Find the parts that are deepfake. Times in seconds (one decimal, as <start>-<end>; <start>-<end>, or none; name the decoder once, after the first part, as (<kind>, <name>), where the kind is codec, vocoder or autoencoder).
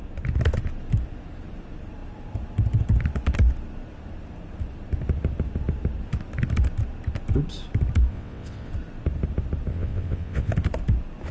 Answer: 8.1-8.7 (vocoder, WaveNeXt); 9.7-10.5